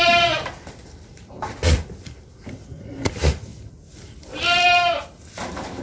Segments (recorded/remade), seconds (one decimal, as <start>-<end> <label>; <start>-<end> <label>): 0.0-5.8 recorded